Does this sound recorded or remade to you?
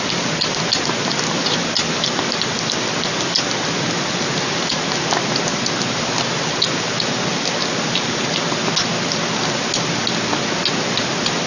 recorded